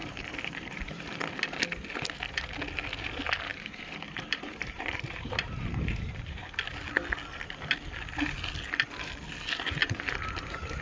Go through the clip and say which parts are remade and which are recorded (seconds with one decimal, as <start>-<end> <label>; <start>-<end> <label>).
0.0-1.1 remade; 1.1-3.5 recorded; 3.5-6.4 remade; 6.4-9.8 recorded; 9.8-10.8 remade